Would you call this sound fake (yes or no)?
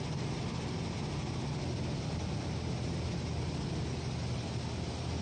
no